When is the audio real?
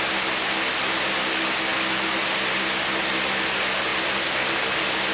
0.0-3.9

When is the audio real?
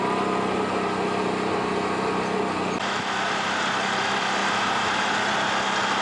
0.0-4.4; 5.0-6.0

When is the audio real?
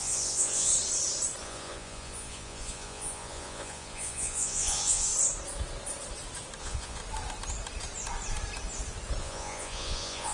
0.7-1.4; 5.1-6.6; 7.0-9.2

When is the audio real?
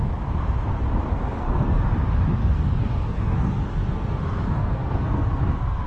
0.0-1.1; 1.8-2.4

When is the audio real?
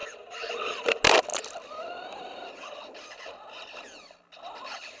0.6-5.0